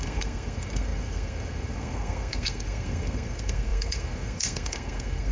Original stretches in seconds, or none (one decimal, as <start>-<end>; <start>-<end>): none